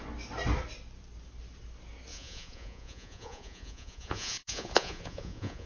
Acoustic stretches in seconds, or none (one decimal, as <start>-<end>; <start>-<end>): 0.0-2.1